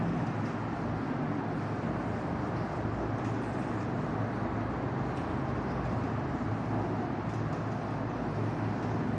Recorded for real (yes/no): yes